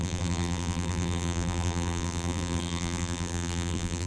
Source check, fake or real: fake